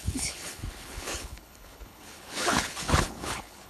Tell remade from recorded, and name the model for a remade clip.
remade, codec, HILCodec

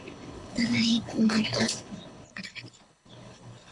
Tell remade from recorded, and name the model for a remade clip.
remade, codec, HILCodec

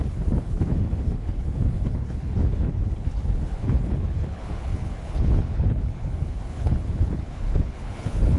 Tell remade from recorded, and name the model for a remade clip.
remade, codec, HILCodec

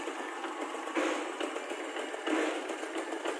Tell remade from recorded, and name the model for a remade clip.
recorded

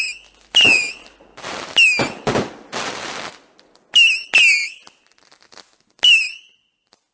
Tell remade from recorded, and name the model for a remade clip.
recorded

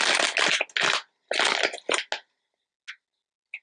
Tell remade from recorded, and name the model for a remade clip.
recorded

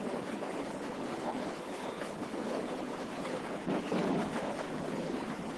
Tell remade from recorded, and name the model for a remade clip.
remade, codec, HILCodec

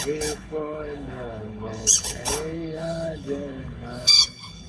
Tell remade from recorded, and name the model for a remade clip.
remade, codec, HILCodec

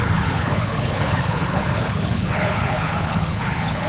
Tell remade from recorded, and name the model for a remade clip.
remade, codec, HILCodec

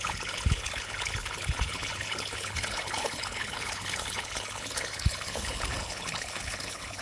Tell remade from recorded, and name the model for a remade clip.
remade, codec, HILCodec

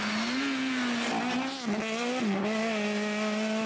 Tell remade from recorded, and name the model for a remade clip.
recorded